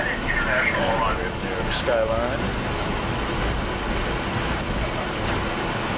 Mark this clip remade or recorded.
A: recorded